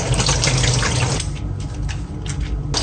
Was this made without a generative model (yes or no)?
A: yes